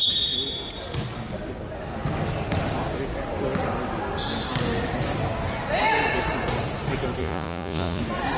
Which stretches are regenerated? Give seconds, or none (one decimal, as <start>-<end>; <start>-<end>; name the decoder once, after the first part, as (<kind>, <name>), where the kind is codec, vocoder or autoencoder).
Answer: 7.2-8.0 (vocoder, Vocos)